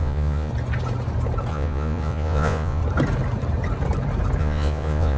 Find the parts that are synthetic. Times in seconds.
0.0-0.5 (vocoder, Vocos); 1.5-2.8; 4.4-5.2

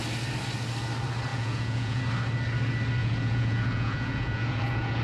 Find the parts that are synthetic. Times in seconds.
1.3-2.0 (vocoder, Vocos); 3.0-5.0